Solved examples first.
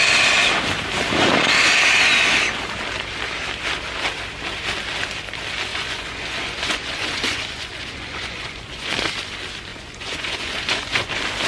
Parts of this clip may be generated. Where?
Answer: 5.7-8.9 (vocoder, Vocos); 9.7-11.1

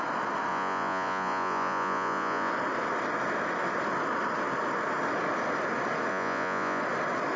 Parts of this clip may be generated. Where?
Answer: 0.5-2.5 (vocoder, Vocos); 6.1-6.8

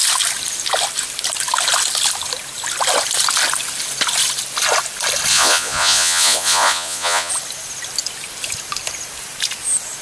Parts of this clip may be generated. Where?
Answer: 5.3-7.3 (vocoder, Vocos)

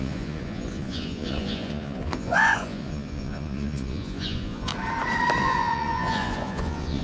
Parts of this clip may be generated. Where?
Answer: 0.0-4.7 (vocoder, Vocos); 5.4-7.0

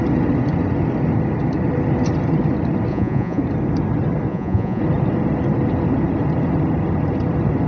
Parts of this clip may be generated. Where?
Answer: 2.9-3.4 (vocoder, Vocos); 4.3-4.8

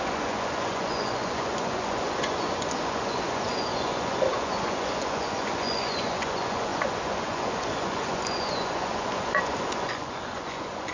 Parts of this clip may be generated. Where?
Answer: 0.0-10.9 (vocoder, Vocos)

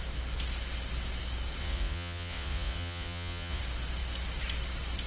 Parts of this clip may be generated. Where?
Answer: 1.6-3.6 (vocoder, Vocos)